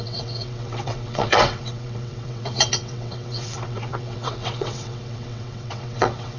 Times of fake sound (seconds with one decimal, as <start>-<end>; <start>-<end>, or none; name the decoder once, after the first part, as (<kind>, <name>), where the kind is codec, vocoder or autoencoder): 0.0-6.4 (vocoder, WaveNeXt)